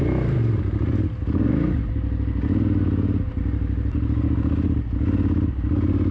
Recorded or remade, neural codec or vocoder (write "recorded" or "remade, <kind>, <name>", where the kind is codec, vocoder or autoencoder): recorded